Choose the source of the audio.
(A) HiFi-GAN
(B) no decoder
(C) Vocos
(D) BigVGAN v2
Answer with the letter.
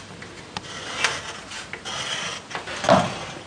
B